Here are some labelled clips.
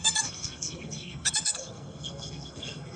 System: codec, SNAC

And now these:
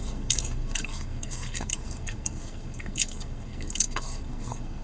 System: codec, SNAC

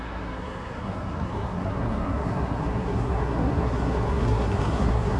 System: codec, SNAC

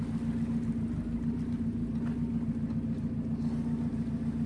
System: none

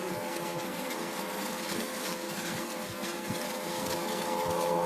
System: codec, SNAC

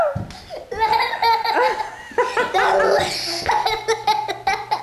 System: none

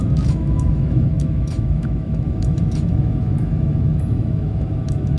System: autoencoder, DAC-VAE